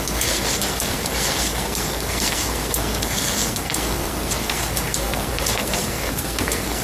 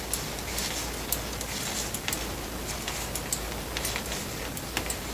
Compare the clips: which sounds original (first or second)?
second